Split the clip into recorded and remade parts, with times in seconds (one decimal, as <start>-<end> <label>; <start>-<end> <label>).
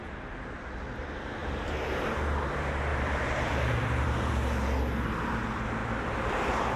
0.0-1.4 recorded; 1.4-2.1 remade; 2.1-2.9 recorded; 2.9-4.3 remade; 4.3-6.8 recorded